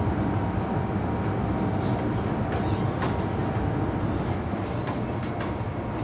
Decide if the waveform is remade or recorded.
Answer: recorded